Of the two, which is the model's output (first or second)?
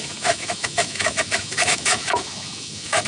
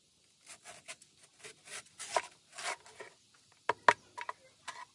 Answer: first